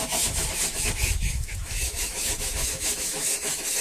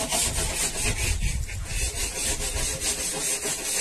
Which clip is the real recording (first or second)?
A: second